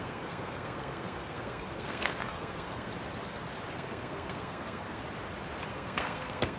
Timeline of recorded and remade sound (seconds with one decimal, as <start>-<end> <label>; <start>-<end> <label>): 0.0-2.9 remade; 2.9-3.7 recorded; 3.7-5.0 remade; 5.0-5.7 recorded; 5.7-6.6 remade